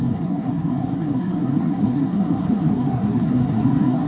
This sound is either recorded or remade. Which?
remade